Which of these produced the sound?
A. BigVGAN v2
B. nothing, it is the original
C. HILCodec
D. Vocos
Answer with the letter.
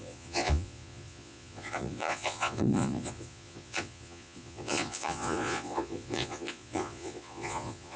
D